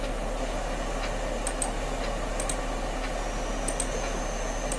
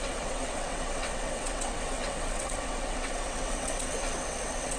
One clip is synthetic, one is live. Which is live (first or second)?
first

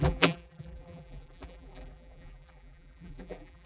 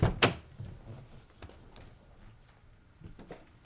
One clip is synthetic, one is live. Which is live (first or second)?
second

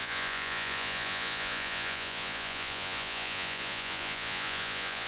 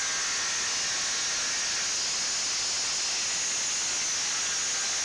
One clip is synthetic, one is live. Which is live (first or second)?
second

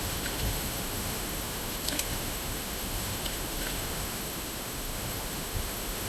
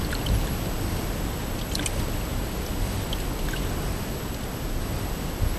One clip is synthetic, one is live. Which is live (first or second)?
second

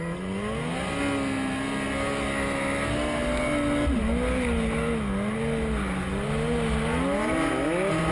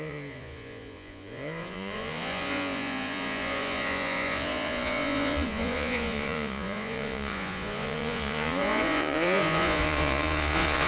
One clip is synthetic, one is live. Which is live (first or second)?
first